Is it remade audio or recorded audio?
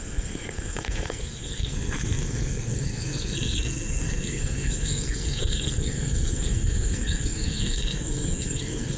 remade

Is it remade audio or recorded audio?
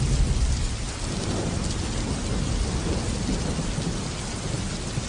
recorded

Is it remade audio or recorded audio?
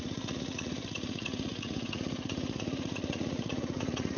remade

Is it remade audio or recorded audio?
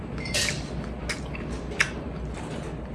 recorded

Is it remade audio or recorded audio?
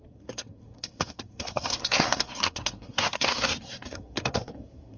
remade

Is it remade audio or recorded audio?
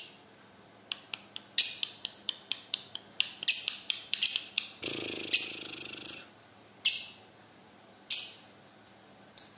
recorded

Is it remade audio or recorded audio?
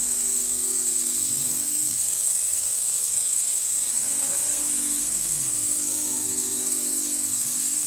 remade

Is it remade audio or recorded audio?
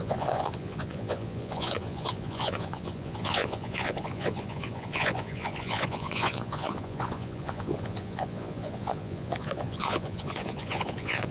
remade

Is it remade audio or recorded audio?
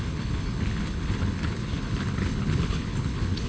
remade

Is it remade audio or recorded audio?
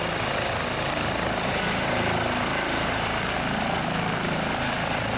recorded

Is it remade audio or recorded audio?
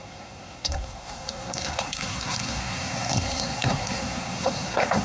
remade